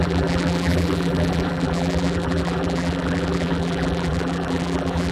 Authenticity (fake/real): fake